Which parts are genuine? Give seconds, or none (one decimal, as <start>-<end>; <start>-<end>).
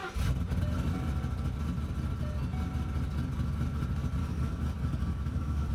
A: 0.0-4.2